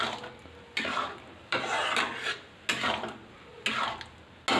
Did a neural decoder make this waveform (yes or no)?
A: no